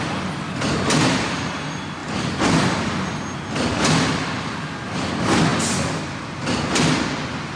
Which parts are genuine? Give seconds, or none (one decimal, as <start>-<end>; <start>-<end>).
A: 0.0-7.6